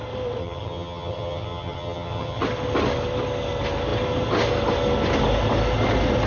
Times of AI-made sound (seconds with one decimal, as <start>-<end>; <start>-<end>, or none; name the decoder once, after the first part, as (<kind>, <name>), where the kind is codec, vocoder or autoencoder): 0.4-2.4 (vocoder, HiFi-GAN)